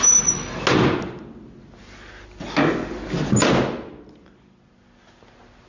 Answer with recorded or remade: recorded